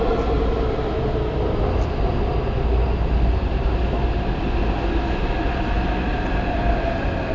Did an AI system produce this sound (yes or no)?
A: no